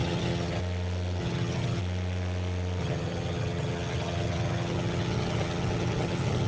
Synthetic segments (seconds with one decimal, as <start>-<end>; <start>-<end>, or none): 0.0-0.6; 1.2-1.8; 2.8-6.5